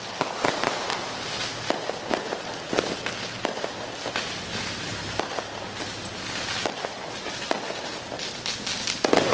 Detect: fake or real real